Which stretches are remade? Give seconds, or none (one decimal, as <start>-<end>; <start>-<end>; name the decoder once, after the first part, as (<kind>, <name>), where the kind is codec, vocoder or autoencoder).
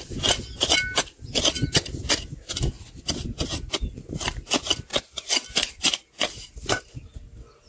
none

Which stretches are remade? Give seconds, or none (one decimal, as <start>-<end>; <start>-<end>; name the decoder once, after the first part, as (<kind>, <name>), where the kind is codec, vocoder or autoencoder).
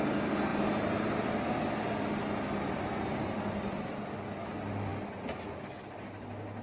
none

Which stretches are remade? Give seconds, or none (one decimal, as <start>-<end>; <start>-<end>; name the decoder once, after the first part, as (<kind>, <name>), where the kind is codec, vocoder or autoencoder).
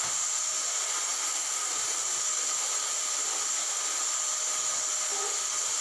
none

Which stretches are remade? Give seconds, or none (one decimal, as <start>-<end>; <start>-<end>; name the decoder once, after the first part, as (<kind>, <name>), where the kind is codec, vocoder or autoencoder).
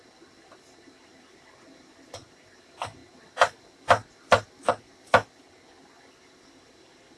none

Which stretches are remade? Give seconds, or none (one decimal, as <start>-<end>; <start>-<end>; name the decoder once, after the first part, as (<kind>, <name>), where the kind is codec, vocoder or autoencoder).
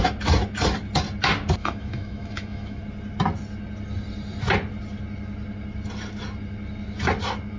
1.6-2.8 (autoencoder, DAC-VAE)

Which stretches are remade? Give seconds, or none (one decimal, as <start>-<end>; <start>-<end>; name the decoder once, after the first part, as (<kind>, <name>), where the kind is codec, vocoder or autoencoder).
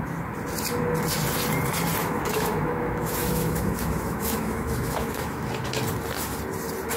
2.0-5.5 (autoencoder, DAC-VAE)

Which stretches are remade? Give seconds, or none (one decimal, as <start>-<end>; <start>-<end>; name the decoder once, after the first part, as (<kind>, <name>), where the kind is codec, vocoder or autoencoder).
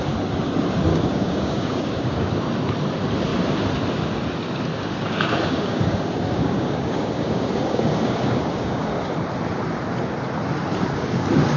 0.9-2.3 (codec, DAC); 4.7-9.1